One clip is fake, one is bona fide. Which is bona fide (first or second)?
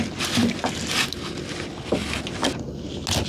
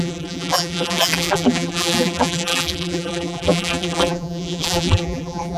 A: first